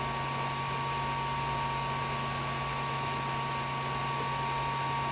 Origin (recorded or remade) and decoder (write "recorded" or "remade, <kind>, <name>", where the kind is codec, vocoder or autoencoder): recorded